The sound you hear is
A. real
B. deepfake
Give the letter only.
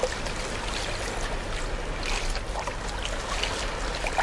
A